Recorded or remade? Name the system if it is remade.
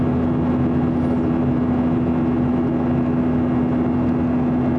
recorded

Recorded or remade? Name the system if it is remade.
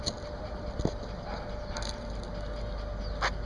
recorded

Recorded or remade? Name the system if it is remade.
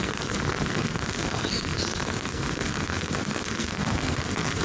remade, codec, SNAC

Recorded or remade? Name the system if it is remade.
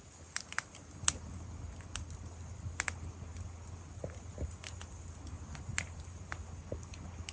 recorded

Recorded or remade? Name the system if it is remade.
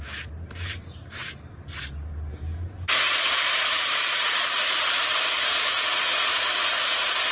remade, vocoder, BigVGAN v2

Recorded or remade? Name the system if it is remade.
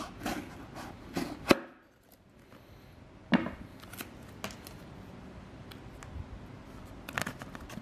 recorded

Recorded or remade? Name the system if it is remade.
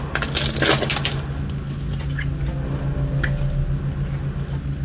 recorded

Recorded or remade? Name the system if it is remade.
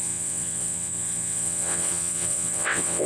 remade, vocoder, WaveNeXt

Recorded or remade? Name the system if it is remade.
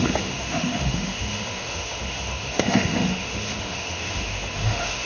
remade, autoencoder, DAC-VAE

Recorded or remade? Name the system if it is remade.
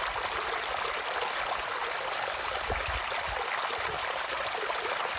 recorded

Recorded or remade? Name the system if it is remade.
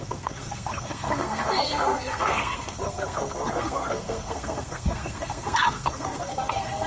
remade, codec, SNAC